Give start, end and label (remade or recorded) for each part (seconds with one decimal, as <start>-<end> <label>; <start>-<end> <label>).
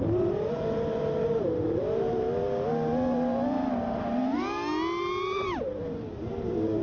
0.0-2.3 remade; 2.3-5.4 recorded; 5.4-6.8 remade